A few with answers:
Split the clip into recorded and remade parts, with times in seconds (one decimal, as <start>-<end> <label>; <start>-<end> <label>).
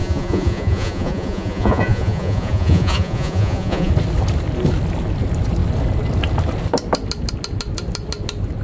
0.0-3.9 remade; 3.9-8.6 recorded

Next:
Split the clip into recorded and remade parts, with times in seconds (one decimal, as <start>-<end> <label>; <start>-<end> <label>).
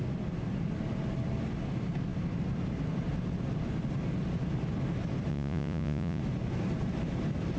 0.0-5.3 recorded; 5.3-6.2 remade; 6.2-7.6 recorded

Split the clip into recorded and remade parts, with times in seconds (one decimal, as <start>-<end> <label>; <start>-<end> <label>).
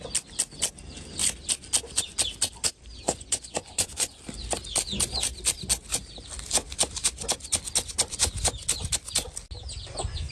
0.0-3.0 recorded; 3.0-4.2 remade; 4.2-10.3 recorded